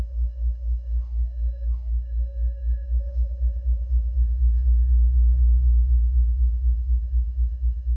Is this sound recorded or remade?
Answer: remade